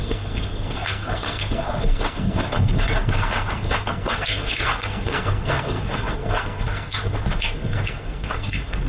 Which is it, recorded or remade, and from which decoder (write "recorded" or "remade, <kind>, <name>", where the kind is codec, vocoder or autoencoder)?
remade, codec, SNAC